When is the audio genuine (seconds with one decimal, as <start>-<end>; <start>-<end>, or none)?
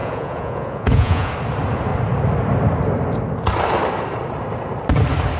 1.3-5.4